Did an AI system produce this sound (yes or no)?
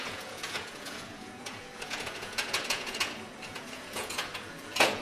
yes